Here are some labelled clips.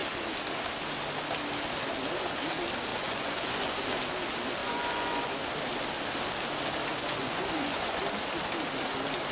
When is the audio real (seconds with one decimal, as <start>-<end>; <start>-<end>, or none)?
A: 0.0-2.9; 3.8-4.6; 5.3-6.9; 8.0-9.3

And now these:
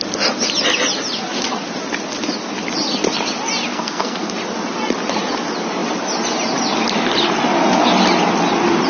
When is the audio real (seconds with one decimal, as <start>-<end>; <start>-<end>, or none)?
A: 0.0-3.7; 4.3-8.9

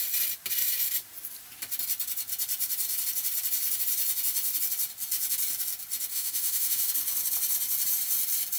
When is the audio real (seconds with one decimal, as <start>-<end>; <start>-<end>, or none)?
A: 0.0-6.1; 6.9-8.6

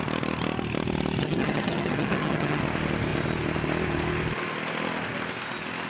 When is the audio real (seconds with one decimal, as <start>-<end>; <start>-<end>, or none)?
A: 0.0-1.2; 2.6-5.9